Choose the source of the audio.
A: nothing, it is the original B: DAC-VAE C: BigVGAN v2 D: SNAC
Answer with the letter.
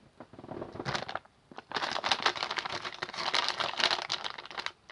A